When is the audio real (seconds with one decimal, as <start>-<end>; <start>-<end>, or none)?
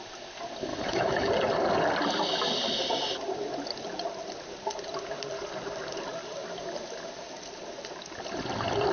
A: 0.0-0.7; 1.3-8.9